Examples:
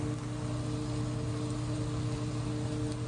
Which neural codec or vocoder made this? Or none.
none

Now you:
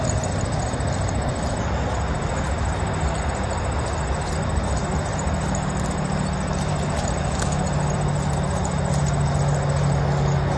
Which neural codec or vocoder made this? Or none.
none